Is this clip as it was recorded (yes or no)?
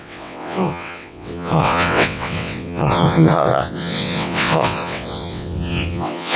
no